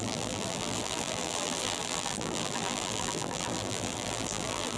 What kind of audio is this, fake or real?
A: fake